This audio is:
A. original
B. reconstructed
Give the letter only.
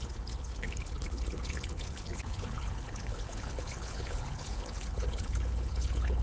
B